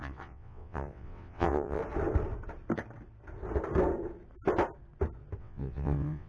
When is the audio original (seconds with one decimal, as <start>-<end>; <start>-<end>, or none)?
1.8-5.4